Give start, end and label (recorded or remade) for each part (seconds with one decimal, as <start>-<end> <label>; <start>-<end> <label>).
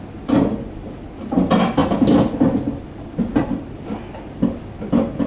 0.0-1.8 recorded; 1.8-4.7 remade; 4.7-5.3 recorded